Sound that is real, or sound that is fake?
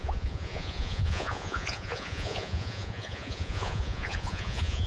fake